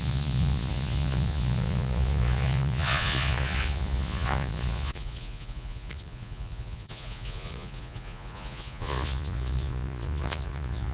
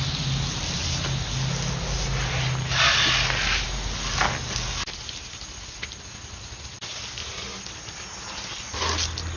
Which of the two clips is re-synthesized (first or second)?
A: first